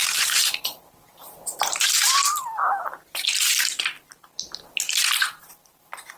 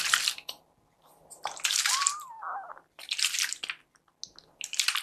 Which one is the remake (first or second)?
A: first